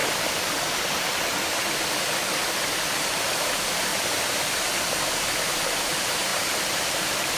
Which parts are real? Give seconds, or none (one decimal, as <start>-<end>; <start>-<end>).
0.0-3.1; 3.9-5.4